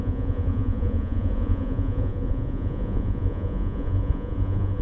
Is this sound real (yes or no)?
no